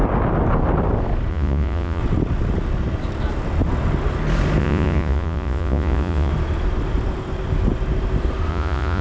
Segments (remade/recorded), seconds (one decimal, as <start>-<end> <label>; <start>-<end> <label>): 0.0-1.3 recorded; 1.3-2.0 remade; 2.0-4.6 recorded; 4.6-6.3 remade; 6.3-8.5 recorded; 8.5-9.0 remade